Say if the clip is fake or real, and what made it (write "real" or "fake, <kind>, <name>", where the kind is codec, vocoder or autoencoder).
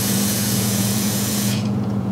fake, vocoder, Vocos